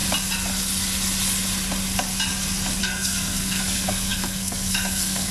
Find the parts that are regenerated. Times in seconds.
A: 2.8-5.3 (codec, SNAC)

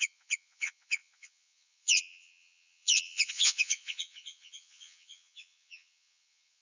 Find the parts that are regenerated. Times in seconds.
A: 0.0-6.6 (vocoder, Vocos)

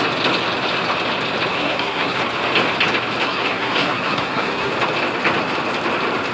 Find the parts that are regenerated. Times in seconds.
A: 1.5-2.2 (codec, SNAC); 3.2-4.7

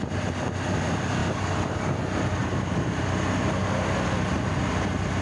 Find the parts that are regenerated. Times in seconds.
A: 1.2-1.8 (vocoder, BigVGAN v2); 2.4-3.0; 3.6-4.4